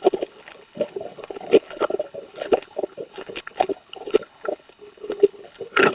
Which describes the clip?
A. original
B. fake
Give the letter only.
B